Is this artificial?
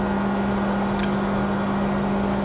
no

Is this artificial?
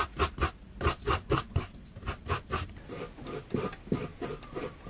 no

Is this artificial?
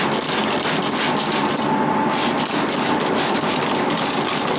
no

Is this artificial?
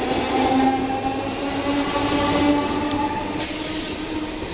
no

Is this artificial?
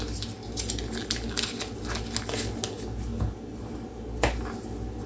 no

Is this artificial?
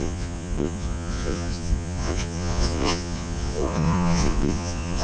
yes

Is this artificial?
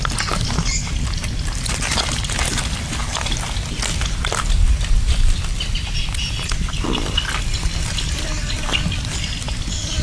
no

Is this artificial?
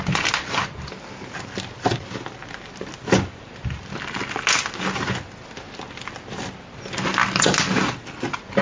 no